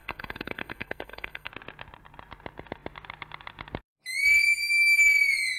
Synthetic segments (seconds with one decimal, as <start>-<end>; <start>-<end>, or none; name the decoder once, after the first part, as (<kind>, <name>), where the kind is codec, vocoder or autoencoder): 0.0-1.5 (codec, SNAC)